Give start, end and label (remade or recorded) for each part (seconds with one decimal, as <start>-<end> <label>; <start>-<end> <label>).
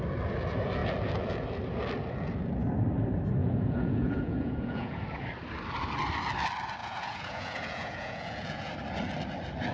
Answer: 0.0-3.4 recorded; 3.4-5.0 remade; 5.0-6.8 recorded; 6.8-8.7 remade; 8.7-9.7 recorded